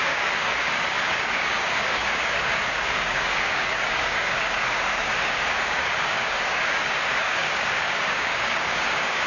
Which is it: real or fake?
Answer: fake